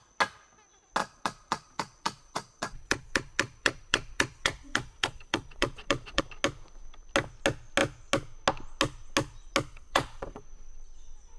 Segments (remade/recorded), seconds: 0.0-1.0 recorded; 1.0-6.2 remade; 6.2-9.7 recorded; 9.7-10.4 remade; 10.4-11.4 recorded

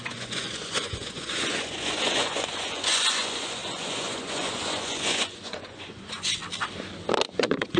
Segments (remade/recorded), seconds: 0.0-6.4 remade; 6.4-7.3 recorded; 7.3-7.8 remade

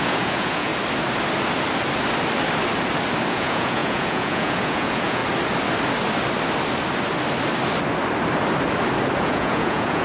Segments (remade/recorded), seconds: 0.0-0.7 remade; 0.7-3.3 recorded; 3.3-5.2 remade; 5.2-9.2 recorded; 9.2-10.0 remade

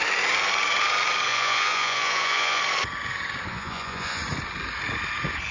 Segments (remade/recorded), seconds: 0.0-1.3 recorded; 1.3-2.6 remade; 2.6-3.5 recorded; 3.5-4.2 remade; 4.2-5.5 recorded

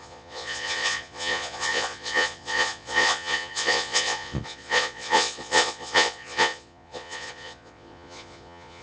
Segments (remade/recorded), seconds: 0.0-8.8 remade

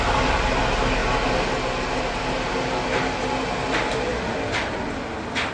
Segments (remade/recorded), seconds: 0.0-5.5 recorded